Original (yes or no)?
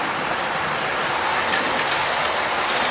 yes